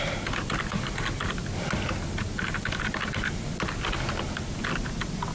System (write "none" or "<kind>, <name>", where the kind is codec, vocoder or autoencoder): none